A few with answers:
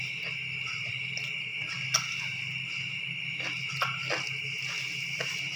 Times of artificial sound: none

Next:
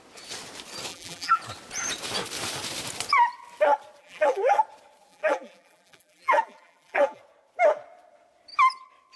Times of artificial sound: 0.9-1.4 (vocoder, BigVGAN v2); 4.0-4.6; 5.1-7.2

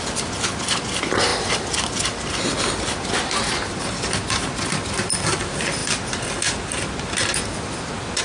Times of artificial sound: 0.0-8.2 (vocoder, BigVGAN v2)

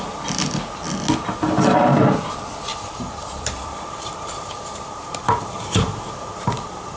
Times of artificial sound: 2.7-7.0 (vocoder, BigVGAN v2)

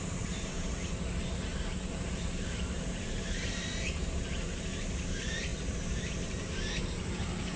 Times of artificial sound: 0.0-7.6 (vocoder, BigVGAN v2)

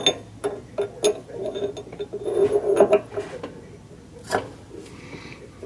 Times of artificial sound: none

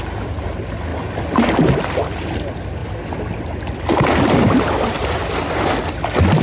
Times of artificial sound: none

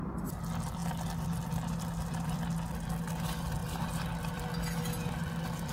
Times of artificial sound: 0.8-2.7 (vocoder, BigVGAN v2); 3.6-4.4